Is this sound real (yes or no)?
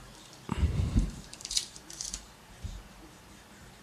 no